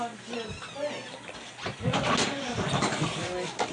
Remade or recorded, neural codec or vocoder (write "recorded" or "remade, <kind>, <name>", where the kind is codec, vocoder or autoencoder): recorded